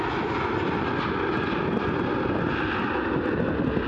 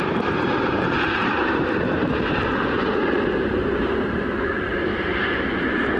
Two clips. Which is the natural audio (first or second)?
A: first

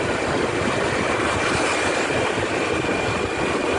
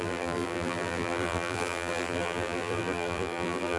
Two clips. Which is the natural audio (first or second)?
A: first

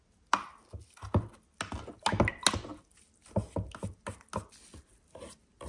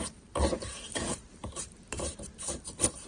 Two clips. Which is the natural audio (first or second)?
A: first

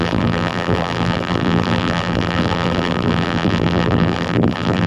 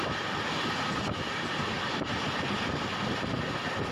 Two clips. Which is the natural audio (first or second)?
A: second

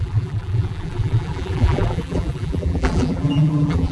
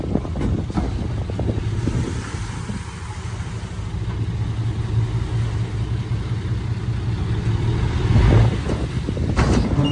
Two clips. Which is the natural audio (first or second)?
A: second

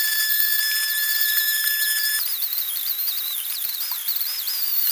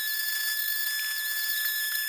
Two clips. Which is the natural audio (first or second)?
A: second